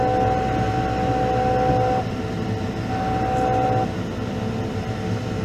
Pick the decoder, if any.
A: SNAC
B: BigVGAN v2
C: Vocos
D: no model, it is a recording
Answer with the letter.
D